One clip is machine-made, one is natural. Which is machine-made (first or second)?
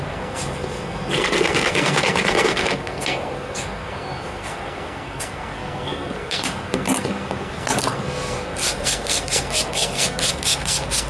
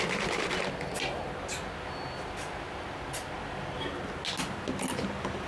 first